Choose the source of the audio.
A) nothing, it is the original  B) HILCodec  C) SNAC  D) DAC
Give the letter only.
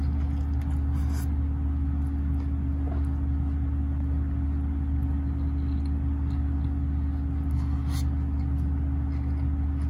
A